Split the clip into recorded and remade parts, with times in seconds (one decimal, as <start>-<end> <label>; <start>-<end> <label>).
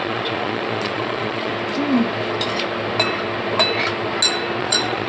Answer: 0.0-1.5 remade; 1.5-4.6 recorded; 4.6-5.1 remade